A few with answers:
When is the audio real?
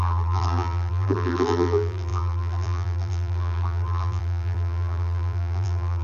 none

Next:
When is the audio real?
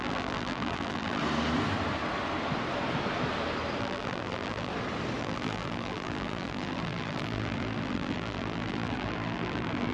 1.2-3.8; 4.7-5.2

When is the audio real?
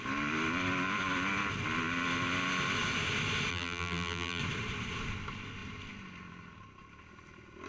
0.0-3.5; 4.4-7.7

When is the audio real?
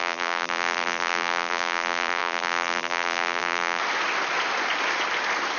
3.8-5.6